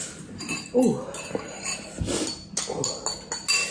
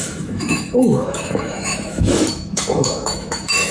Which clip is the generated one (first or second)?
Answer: second